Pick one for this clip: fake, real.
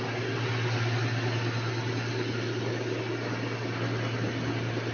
real